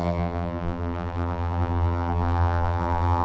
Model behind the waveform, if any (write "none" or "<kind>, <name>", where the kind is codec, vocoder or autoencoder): vocoder, BigVGAN v2